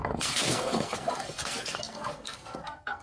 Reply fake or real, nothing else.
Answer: fake